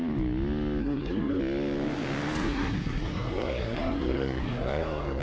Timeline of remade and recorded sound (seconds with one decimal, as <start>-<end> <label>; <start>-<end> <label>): 0.0-0.8 recorded; 0.8-1.4 remade; 1.4-2.4 recorded; 2.4-5.2 remade

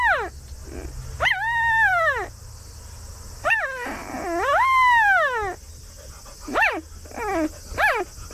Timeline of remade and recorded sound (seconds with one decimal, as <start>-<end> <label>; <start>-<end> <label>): 0.0-8.3 recorded

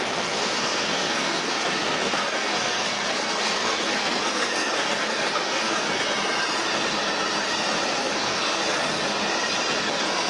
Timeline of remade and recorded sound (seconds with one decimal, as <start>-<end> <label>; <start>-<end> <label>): 0.0-6.0 remade; 6.0-8.0 recorded; 8.0-8.6 remade; 8.6-9.8 recorded; 9.8-10.3 remade

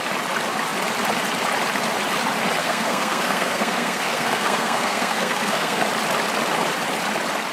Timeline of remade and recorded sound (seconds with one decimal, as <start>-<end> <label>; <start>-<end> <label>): 0.0-2.6 recorded; 2.6-5.8 remade; 5.8-7.5 recorded

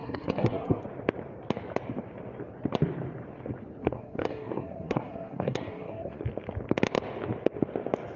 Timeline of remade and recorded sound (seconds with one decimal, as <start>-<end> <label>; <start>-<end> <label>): 0.0-0.8 remade; 0.8-3.8 recorded; 3.8-6.2 remade; 6.2-8.2 recorded